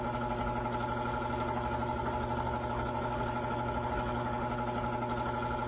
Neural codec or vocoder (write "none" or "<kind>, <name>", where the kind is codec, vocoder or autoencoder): none